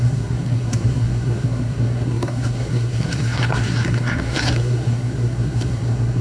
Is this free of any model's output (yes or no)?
no